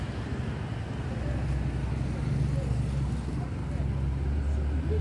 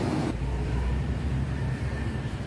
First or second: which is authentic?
first